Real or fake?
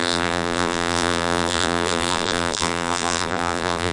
fake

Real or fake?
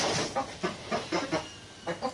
real